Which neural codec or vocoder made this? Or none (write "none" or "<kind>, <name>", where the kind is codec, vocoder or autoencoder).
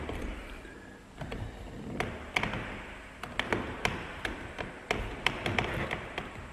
none